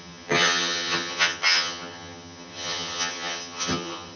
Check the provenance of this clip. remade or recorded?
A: remade